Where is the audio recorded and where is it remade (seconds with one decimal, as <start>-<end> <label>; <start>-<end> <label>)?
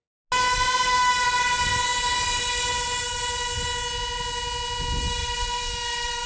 0.0-1.9 recorded; 1.9-3.4 remade; 3.4-5.2 recorded; 5.2-6.3 remade